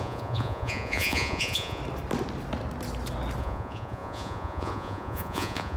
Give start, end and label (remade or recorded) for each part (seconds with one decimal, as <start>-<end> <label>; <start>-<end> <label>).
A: 0.0-1.8 remade; 1.8-3.4 recorded; 3.4-5.8 remade